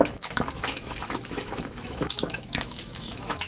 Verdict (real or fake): fake